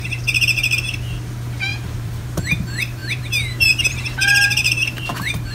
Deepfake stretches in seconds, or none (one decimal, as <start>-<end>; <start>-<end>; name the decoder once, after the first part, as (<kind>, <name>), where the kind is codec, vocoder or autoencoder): 1.7-2.4 (vocoder, BigVGAN v2); 3.0-5.5